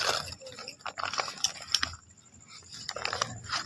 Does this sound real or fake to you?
real